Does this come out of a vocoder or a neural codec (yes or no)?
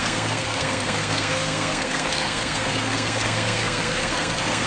yes